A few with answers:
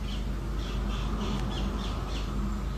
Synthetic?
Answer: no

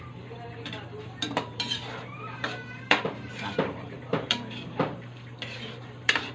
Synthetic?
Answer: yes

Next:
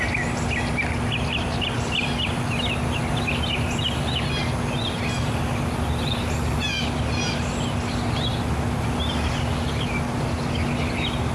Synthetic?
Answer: no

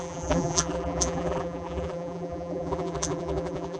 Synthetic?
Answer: yes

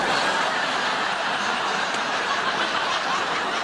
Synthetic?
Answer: yes